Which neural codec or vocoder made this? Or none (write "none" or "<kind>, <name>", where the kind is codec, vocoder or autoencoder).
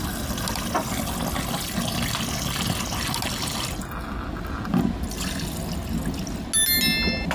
none